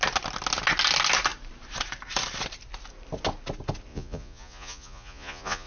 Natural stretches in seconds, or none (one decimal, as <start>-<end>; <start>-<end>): 0.0-3.9